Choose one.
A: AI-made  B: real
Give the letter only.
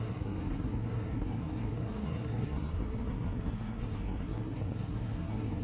A